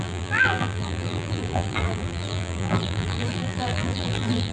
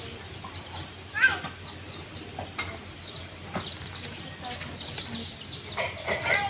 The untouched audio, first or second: second